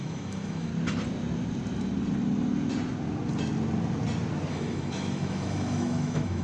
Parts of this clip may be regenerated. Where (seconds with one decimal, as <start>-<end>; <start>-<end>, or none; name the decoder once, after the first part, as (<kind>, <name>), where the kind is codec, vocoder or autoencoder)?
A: 0.0-0.7 (autoencoder, DAC-VAE); 4.5-6.4